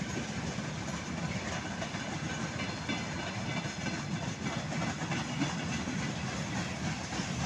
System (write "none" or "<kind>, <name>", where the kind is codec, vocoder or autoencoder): none